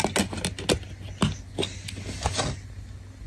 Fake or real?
real